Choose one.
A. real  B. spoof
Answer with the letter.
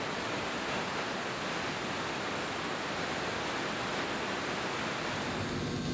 A